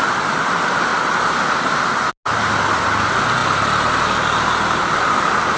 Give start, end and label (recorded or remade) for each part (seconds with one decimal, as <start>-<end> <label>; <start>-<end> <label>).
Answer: 0.0-3.4 recorded; 3.4-5.6 remade